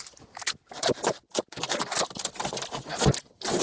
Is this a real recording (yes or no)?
yes